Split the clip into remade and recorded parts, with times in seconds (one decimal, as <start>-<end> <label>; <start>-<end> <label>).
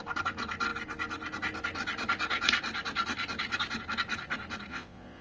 0.0-4.7 recorded; 4.7-5.2 remade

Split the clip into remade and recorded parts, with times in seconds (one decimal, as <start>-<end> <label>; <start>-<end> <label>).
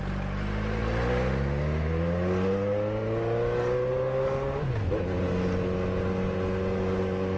0.0-7.4 recorded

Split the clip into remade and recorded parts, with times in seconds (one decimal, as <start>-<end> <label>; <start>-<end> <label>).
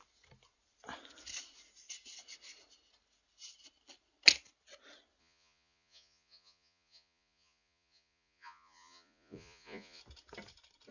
0.0-5.2 recorded; 5.2-10.0 remade; 10.0-10.9 recorded